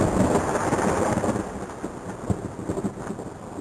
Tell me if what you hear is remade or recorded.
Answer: recorded